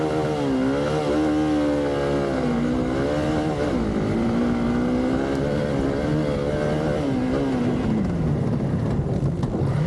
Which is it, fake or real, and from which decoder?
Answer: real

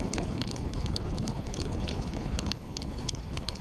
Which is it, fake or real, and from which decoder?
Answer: fake, codec, HILCodec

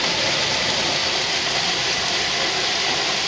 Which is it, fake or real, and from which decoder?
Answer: real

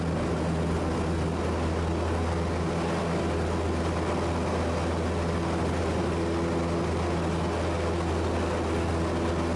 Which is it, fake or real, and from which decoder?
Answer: real